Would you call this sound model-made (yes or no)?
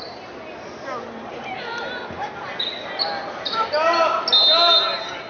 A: no